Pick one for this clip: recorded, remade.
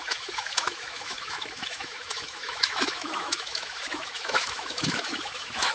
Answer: remade